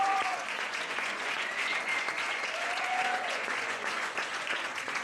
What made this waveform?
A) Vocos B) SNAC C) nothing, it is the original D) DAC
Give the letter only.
A